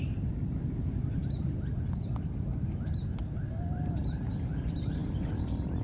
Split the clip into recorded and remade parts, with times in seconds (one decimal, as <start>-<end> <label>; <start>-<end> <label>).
0.0-5.8 recorded